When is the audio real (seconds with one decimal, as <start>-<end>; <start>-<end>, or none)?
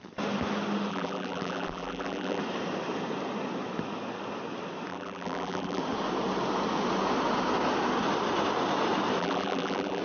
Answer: 0.0-0.9; 2.4-4.9; 5.8-9.2